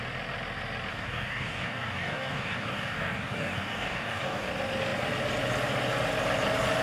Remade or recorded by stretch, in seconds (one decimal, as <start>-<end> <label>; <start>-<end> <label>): 0.0-0.9 recorded; 0.9-4.5 remade; 4.5-6.8 recorded